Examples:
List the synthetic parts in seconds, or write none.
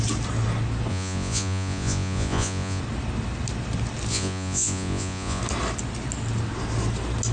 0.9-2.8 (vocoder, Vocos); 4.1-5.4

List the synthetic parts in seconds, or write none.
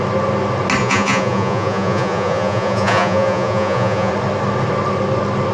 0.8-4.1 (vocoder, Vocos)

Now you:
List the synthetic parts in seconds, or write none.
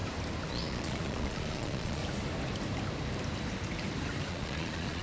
0.5-2.0 (vocoder, Vocos); 4.3-5.0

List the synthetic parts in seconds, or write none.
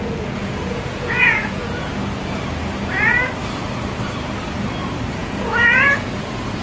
0.0-1.9 (vocoder, Vocos); 5.2-6.1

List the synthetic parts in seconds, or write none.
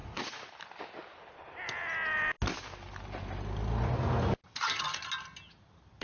0.0-0.5 (vocoder, Vocos)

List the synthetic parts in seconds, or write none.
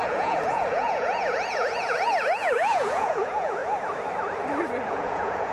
0.0-3.6 (vocoder, Vocos); 4.9-5.5